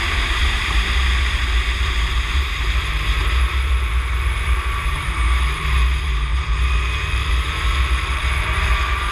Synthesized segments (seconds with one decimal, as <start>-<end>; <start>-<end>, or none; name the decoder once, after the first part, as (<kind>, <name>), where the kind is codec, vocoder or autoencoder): 0.0-9.1 (vocoder, BigVGAN v2)

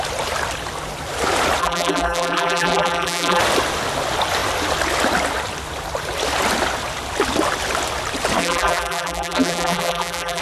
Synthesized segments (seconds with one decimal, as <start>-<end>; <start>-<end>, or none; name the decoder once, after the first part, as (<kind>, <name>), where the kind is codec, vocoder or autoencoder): 1.6-3.4 (vocoder, BigVGAN v2); 8.4-10.4

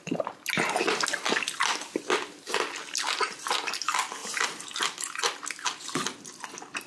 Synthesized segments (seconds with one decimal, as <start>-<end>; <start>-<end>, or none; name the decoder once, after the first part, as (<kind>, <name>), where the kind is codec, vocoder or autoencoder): none

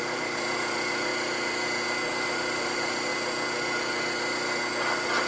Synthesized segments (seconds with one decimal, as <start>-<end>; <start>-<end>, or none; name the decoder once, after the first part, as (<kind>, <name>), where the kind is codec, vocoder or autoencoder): 0.0-1.1 (vocoder, BigVGAN v2); 2.1-3.1